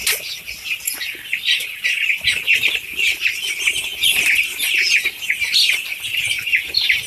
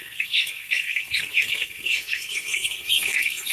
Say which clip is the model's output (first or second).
second